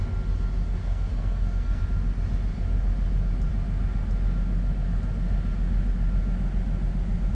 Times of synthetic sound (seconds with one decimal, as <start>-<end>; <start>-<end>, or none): 0.8-1.8